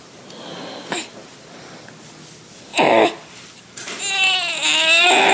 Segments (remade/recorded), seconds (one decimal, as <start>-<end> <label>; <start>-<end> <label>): 0.0-2.7 recorded; 2.7-4.0 remade; 4.0-5.3 recorded

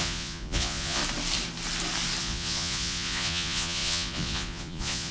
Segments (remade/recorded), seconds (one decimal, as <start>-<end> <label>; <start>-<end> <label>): 0.0-1.0 remade; 1.0-2.2 recorded; 2.2-5.1 remade

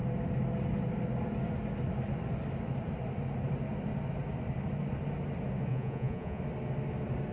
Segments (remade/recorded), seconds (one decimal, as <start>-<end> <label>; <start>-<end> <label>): 0.0-5.7 recorded; 5.7-6.4 remade; 6.4-7.3 recorded

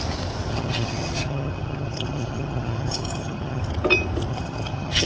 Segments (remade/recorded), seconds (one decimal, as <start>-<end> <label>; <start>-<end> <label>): 0.0-0.5 recorded; 0.5-3.6 remade; 3.6-4.3 recorded; 4.3-5.1 remade

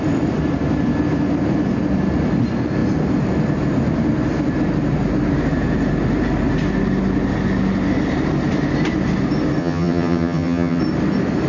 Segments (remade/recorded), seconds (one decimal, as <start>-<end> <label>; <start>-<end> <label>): 0.0-9.6 recorded; 9.6-10.8 remade; 10.8-11.5 recorded

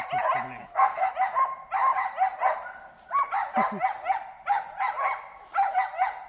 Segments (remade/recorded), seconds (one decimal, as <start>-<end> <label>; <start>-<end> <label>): 0.0-0.6 recorded; 0.6-1.1 remade; 1.1-6.3 recorded

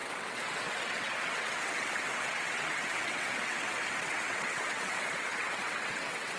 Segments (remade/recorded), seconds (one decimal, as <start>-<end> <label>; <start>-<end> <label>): 0.0-6.4 remade